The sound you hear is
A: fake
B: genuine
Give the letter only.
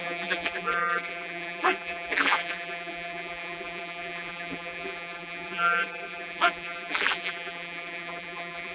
A